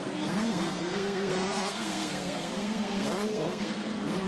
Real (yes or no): no